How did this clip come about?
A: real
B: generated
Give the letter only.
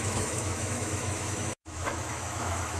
B